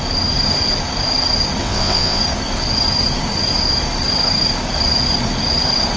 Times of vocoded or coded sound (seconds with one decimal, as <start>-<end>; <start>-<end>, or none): 1.6-2.2

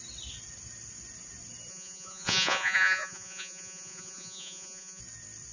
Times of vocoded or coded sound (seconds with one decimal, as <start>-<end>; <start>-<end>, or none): 1.7-5.0

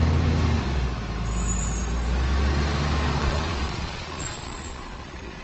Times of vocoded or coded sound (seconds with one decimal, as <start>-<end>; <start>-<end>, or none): 3.2-5.4

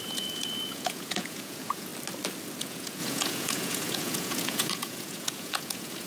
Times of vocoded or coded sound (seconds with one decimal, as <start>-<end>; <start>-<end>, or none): 0.0-1.9; 2.6-6.1

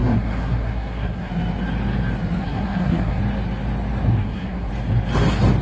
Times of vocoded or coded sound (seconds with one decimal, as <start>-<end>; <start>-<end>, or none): 0.0-1.3; 2.4-3.2; 4.2-4.7

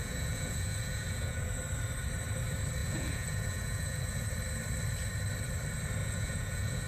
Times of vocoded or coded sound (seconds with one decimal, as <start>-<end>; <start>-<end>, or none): 0.0-1.6; 2.8-4.2; 6.0-6.9

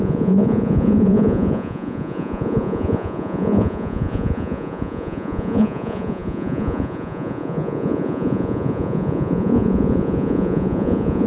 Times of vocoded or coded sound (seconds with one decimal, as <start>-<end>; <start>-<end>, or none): 0.0-11.3

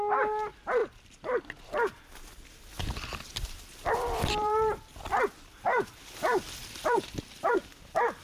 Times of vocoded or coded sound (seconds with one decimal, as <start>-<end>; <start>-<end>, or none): 0.8-1.4; 2.7-5.2; 5.7-7.5